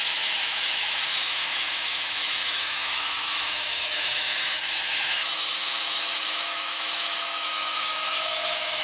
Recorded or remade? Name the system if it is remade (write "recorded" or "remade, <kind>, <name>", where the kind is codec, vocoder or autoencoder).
remade, autoencoder, DAC-VAE